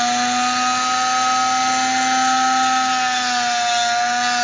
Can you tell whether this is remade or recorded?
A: recorded